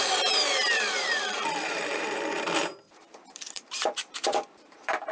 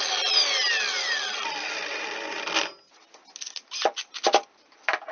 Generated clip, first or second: first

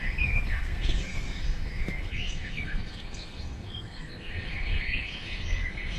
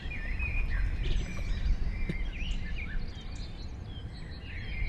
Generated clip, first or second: first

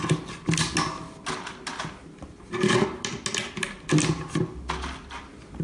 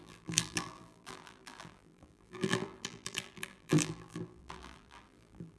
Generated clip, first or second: second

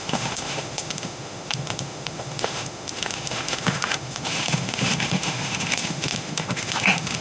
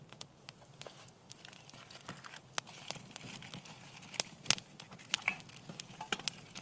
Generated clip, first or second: first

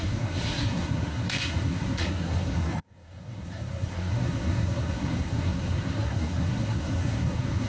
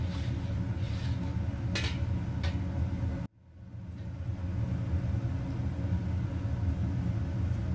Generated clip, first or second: first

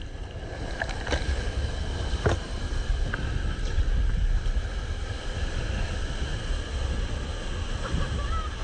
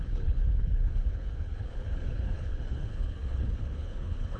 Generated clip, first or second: second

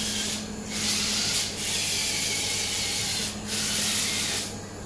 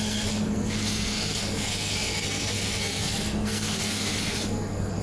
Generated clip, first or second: second